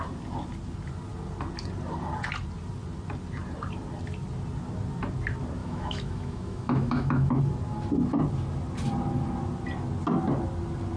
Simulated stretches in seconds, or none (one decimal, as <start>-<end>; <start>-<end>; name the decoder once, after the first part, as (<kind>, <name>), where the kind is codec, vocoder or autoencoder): 5.6-7.4 (autoencoder, DAC-VAE)

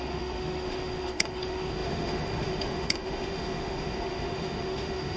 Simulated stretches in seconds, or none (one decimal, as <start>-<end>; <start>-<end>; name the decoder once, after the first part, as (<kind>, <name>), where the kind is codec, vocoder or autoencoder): 0.0-5.2 (autoencoder, DAC-VAE)